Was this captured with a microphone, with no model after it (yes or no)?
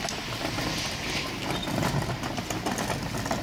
yes